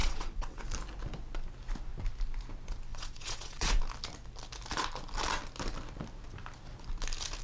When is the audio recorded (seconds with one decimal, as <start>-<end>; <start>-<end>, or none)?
0.6-2.9; 3.8-7.4